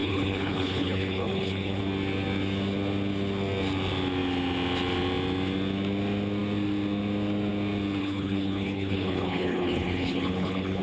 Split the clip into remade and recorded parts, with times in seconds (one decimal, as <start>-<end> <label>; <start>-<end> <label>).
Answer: 0.0-1.8 remade; 1.8-8.0 recorded; 8.0-10.8 remade